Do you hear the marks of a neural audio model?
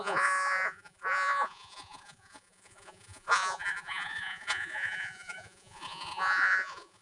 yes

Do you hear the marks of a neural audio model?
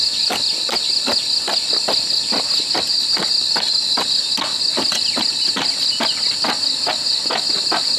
no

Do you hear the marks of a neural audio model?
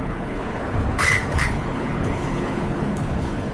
yes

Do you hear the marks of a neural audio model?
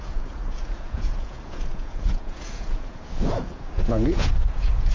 yes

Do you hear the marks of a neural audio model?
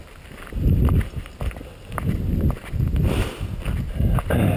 no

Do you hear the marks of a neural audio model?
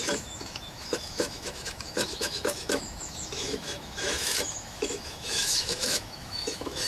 yes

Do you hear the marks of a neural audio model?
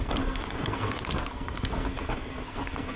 yes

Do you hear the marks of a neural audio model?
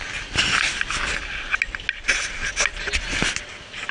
no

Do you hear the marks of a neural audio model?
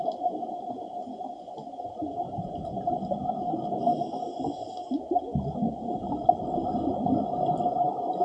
no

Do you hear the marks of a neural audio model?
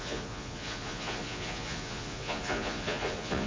yes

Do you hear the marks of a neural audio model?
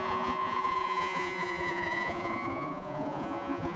yes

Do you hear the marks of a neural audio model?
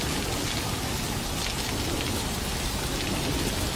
no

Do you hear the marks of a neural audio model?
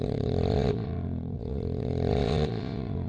yes